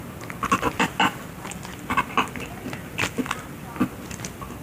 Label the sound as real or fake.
real